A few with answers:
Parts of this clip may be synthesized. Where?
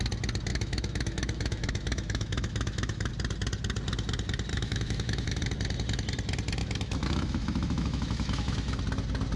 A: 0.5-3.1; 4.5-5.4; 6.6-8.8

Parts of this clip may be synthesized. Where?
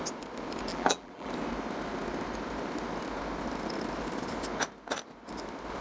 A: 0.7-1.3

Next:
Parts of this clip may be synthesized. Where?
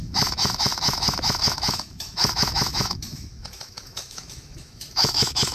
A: 0.0-5.5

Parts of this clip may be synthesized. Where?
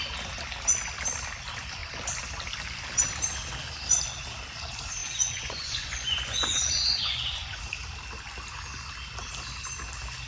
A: 5.0-7.6